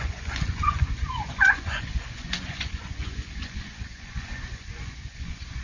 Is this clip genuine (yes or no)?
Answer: no